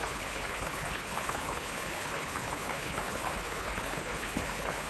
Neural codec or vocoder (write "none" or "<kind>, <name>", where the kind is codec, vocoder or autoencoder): codec, HILCodec